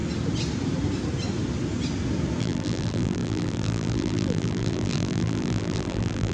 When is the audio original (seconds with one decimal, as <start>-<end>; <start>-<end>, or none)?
0.0-2.4